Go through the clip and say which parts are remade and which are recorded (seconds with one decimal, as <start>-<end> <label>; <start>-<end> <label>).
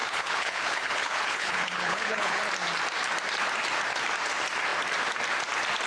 0.0-2.4 remade; 2.4-5.9 recorded